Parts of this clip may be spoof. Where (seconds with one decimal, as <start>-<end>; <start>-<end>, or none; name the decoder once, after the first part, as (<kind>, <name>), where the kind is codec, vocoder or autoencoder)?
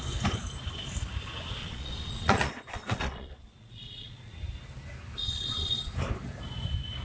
1.6-4.4 (vocoder, Vocos); 5.2-5.9